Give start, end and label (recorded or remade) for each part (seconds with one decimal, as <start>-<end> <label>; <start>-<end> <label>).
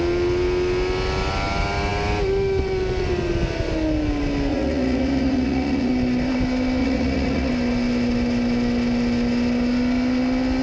0.0-4.5 recorded; 4.5-5.9 remade; 5.9-6.8 recorded; 6.8-7.5 remade; 7.5-10.6 recorded